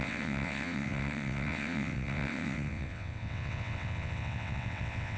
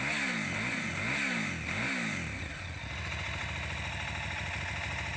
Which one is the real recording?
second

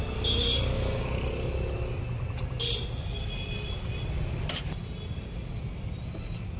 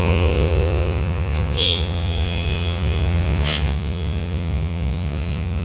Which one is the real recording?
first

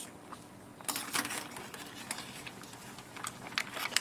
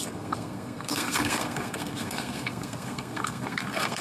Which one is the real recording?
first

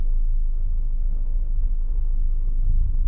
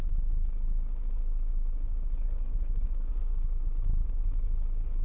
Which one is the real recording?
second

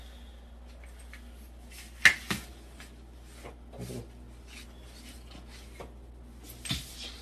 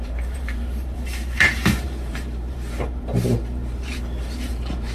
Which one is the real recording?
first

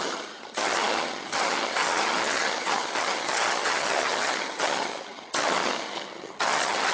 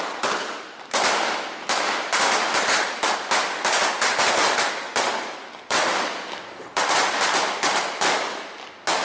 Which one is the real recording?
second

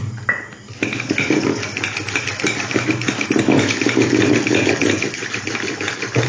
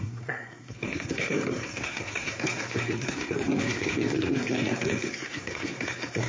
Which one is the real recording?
first